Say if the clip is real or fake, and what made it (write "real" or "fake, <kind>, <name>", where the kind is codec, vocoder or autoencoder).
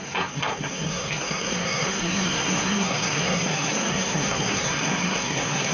fake, codec, SNAC